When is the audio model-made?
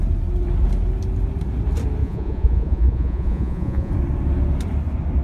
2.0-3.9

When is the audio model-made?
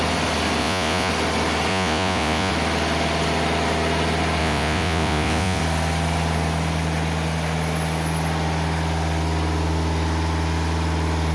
0.6-1.1; 1.7-2.5; 4.4-5.6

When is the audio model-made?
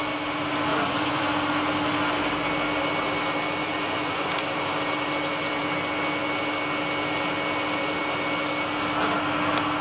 0.7-1.2; 3.6-4.3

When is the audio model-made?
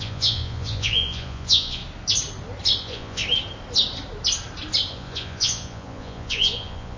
0.0-1.8; 2.8-3.2; 4.9-7.0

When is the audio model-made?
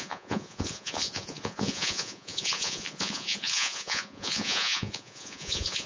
0.0-5.9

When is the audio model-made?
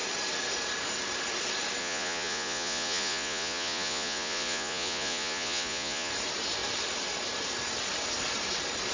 1.8-6.1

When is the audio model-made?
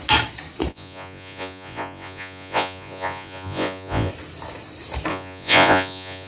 0.7-4.1; 5.1-6.3